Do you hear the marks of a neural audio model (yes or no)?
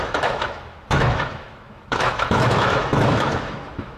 yes